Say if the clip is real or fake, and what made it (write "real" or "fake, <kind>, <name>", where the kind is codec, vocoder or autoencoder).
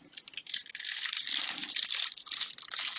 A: real